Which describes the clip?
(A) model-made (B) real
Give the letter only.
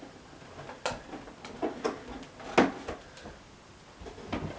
B